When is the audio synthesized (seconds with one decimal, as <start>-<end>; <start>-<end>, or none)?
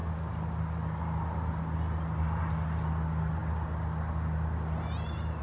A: none